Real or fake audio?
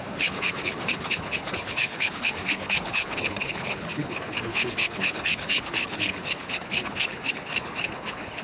fake